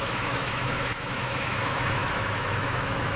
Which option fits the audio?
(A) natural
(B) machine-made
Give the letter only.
B